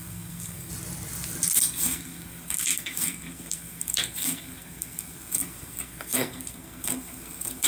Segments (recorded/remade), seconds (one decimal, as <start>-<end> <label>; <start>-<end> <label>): 0.0-0.7 remade; 0.7-1.6 recorded; 1.6-7.7 remade